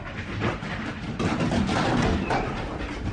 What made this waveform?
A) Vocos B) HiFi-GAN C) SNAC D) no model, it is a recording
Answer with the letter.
D